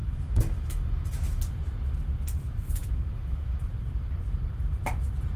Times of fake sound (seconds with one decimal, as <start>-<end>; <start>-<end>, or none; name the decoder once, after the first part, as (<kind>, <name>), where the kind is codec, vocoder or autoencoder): 0.0-1.4 (autoencoder, DAC-VAE); 2.8-3.6